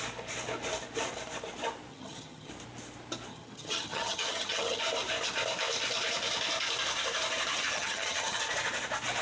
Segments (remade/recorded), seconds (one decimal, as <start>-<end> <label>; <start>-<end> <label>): 0.0-1.9 recorded; 1.9-2.5 remade; 2.5-3.3 recorded; 3.3-4.8 remade; 4.8-7.5 recorded; 7.5-8.4 remade; 8.4-9.2 recorded